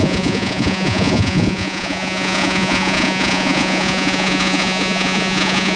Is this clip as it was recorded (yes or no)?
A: no